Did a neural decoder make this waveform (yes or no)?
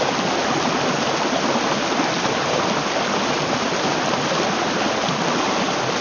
no